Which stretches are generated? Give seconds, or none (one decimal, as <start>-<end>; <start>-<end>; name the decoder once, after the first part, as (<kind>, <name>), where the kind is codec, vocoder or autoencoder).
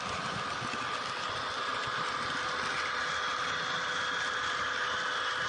none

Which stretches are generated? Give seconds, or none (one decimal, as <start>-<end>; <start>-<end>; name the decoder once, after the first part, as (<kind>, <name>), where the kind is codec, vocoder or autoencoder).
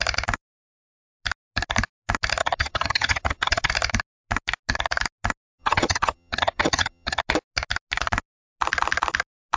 2.4-3.7 (vocoder, HiFi-GAN); 5.6-7.2